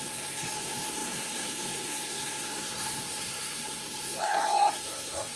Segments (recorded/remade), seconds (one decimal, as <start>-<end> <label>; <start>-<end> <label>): 0.0-5.4 remade